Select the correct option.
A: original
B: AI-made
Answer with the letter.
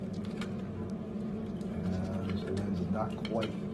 A